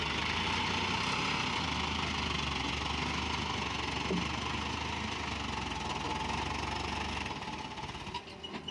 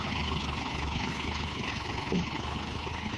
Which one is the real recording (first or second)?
first